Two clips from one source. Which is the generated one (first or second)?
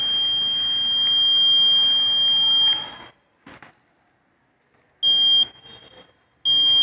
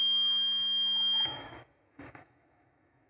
second